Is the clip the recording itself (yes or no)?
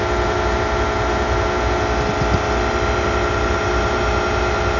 yes